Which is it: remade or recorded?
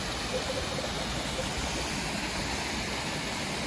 recorded